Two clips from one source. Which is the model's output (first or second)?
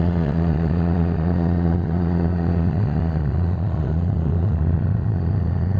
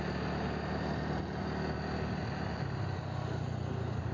first